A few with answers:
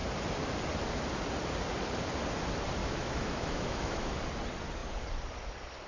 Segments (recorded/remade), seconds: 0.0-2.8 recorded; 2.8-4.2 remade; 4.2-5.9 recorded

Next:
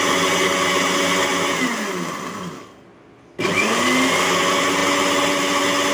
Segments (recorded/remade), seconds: 0.0-4.8 recorded; 4.8-5.3 remade; 5.3-5.9 recorded

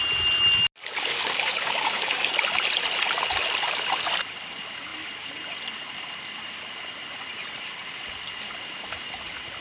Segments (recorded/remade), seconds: 0.0-0.8 recorded; 0.8-2.3 remade; 2.3-9.6 recorded

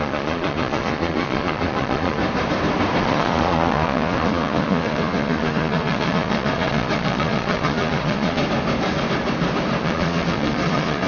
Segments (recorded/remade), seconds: 0.0-2.2 remade; 2.2-3.0 recorded; 3.0-8.4 remade; 8.4-9.8 recorded; 9.8-11.1 remade

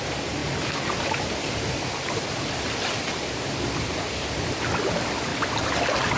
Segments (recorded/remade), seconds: 0.0-6.2 recorded

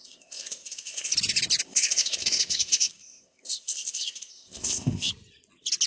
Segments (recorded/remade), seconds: 0.0-1.1 remade; 1.1-1.6 recorded; 1.6-5.1 remade; 5.1-5.9 recorded

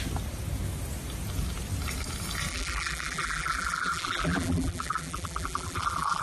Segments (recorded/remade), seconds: 0.0-2.5 recorded; 2.5-6.2 remade